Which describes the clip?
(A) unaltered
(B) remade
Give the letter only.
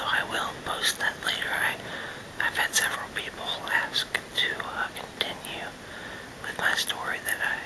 A